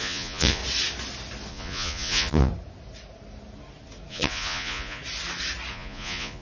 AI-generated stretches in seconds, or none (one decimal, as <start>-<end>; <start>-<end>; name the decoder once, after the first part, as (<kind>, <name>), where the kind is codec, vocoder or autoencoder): 0.0-0.6 (vocoder, Vocos); 1.5-2.5; 4.1-5.0; 5.7-6.4